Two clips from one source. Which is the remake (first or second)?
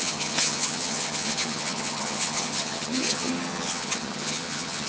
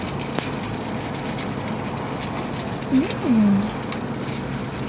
first